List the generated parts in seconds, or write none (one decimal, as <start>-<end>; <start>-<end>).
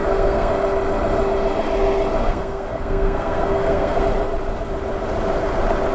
0.0-0.5; 2.2-4.0